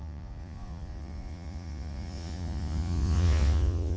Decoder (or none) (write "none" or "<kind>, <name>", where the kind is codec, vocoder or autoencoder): vocoder, Vocos